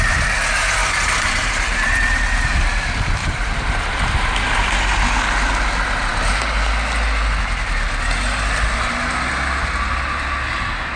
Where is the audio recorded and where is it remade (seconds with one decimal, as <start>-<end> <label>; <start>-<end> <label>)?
0.0-0.8 recorded; 0.8-1.9 remade; 1.9-3.2 recorded; 3.2-4.2 remade; 4.2-11.0 recorded